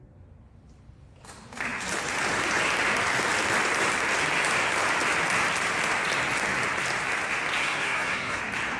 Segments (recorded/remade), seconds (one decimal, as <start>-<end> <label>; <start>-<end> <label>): 0.0-7.6 recorded; 7.6-8.4 remade; 8.4-8.8 recorded